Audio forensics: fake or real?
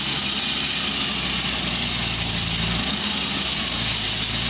real